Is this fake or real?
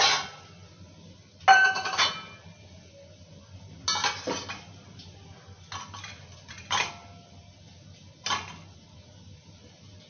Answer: real